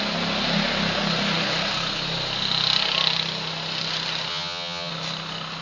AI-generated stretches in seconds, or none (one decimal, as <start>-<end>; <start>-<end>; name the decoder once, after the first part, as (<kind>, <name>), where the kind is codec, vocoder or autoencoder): 4.3-4.9 (vocoder, HiFi-GAN)